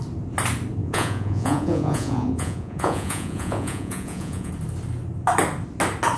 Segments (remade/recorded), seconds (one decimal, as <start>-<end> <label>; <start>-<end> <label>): 0.0-0.8 recorded; 0.8-4.5 remade; 4.5-6.2 recorded